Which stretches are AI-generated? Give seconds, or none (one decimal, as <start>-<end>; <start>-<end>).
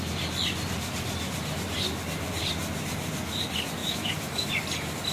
3.8-4.5